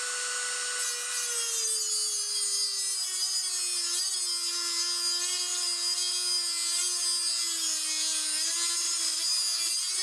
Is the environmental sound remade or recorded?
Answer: recorded